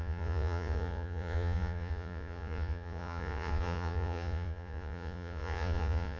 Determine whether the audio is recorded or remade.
remade